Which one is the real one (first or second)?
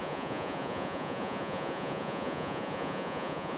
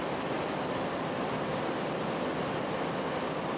second